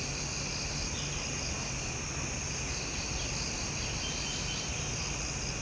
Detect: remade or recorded recorded